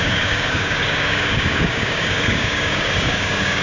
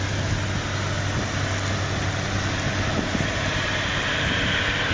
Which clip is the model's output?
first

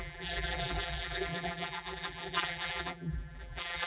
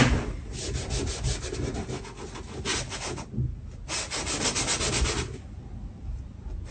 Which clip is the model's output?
first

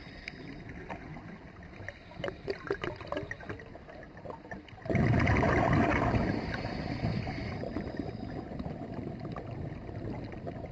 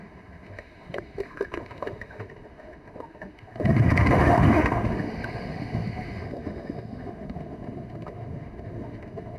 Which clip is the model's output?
second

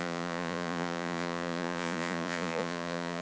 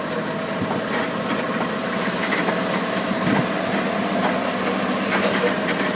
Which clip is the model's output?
first